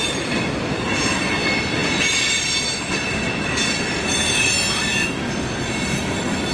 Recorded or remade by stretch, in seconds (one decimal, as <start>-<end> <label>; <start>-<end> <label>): 0.0-6.5 recorded